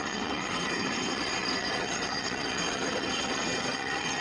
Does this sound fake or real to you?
fake